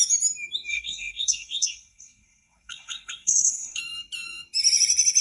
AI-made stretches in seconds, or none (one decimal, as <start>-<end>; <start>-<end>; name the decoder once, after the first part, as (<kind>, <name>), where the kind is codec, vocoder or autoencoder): 0.7-3.8 (codec, SNAC)